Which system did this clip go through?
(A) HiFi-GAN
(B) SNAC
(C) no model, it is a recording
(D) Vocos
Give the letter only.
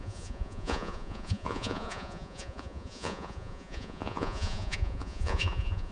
D